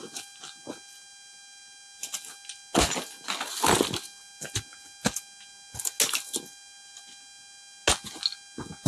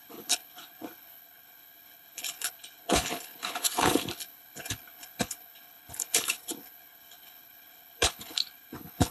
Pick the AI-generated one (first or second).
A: second